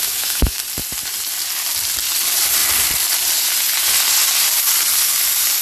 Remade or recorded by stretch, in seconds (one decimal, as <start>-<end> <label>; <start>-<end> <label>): 0.0-0.6 remade; 0.6-5.6 recorded